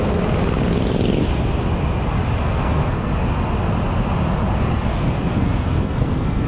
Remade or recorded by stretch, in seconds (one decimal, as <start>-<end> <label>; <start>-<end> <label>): 0.0-2.4 recorded; 2.4-3.1 remade; 3.1-4.6 recorded; 4.6-6.5 remade